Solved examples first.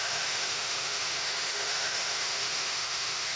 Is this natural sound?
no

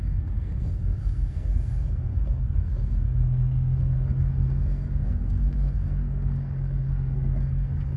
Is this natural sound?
no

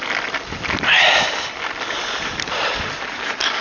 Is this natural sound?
yes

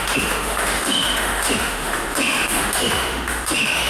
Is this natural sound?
no